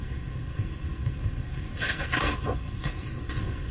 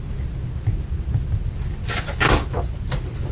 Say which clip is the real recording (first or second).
second